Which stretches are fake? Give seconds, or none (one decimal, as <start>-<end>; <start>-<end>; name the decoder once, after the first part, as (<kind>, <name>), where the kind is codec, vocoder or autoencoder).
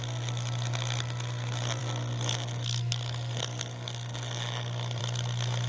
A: none